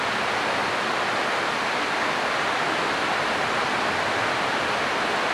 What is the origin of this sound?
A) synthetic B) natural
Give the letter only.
B